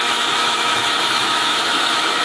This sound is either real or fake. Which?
fake